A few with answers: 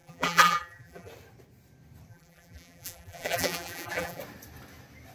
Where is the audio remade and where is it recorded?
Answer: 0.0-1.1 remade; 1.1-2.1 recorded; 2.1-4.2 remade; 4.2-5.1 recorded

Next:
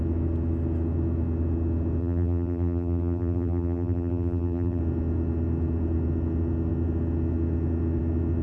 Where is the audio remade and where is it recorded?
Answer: 0.0-2.0 recorded; 2.0-4.8 remade; 4.8-8.4 recorded

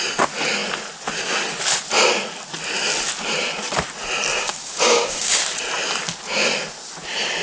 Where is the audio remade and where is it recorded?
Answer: 0.0-4.3 recorded; 4.3-5.4 remade; 5.4-7.4 recorded

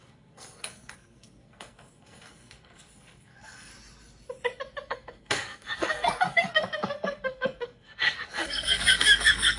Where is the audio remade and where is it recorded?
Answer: 0.0-3.7 remade; 3.7-4.9 recorded; 4.9-9.6 remade

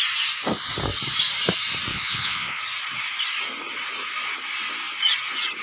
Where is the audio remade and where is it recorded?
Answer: 0.0-1.9 recorded; 1.9-2.6 remade; 2.6-5.6 recorded

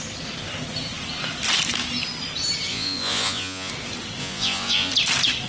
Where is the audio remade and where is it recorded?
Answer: 0.0-2.7 recorded; 2.7-3.7 remade; 3.7-4.2 recorded; 4.2-4.9 remade; 4.9-5.5 recorded

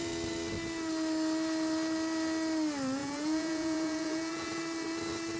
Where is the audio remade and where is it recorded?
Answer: 0.0-3.0 recorded; 3.0-4.6 remade; 4.6-5.4 recorded

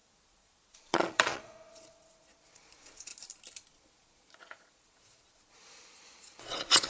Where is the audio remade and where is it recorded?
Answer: 0.0-3.1 remade; 3.1-3.7 recorded; 3.7-6.9 remade